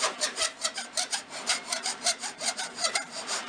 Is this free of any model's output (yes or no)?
no